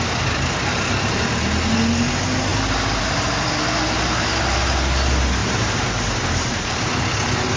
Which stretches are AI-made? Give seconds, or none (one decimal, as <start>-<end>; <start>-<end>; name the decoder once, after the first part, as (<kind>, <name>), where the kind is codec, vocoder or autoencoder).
5.4-6.9 (vocoder, BigVGAN v2)